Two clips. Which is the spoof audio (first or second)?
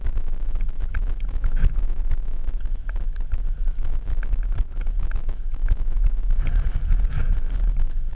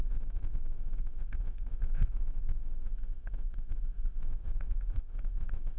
second